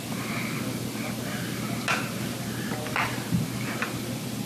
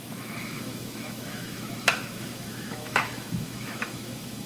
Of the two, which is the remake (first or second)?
second